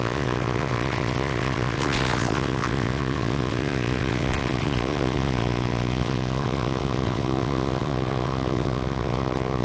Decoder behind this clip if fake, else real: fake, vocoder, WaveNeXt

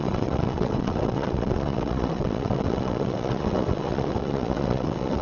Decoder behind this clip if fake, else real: fake, vocoder, WaveNeXt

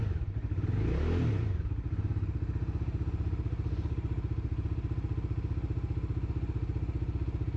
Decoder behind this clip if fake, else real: real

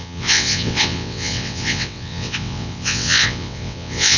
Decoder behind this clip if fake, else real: fake, vocoder, WaveNeXt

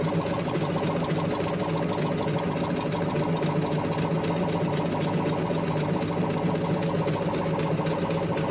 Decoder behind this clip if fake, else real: real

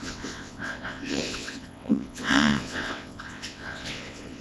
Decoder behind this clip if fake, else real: fake, vocoder, WaveNeXt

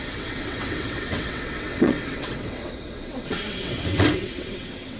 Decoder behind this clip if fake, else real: fake, vocoder, WaveNeXt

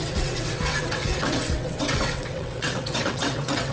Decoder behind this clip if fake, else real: fake, vocoder, WaveNeXt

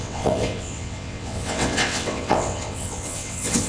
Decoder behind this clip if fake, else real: fake, vocoder, WaveNeXt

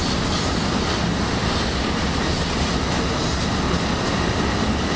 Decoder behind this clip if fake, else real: real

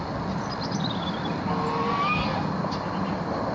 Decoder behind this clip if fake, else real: real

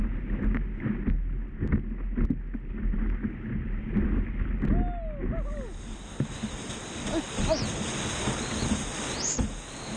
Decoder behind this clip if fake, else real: real